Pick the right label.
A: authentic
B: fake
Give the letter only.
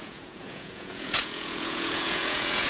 B